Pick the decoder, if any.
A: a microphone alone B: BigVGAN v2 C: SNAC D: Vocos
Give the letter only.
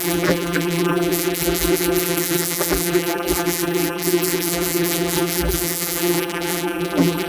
B